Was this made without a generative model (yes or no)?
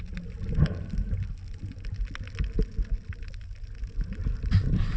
yes